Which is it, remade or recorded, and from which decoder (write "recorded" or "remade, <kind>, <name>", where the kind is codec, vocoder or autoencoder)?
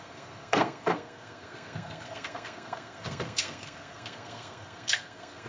remade, codec, SNAC